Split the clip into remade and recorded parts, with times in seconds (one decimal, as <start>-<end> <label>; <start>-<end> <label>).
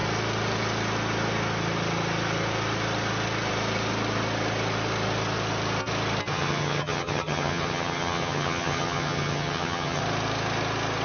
0.0-6.3 recorded; 6.3-10.0 remade; 10.0-11.0 recorded